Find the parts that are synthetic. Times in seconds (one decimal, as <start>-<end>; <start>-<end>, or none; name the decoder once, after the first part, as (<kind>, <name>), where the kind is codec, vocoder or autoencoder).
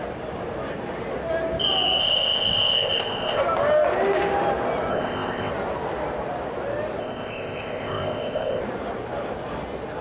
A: 2.0-3.4 (codec, ZipCodec); 4.9-5.5; 7.0-8.6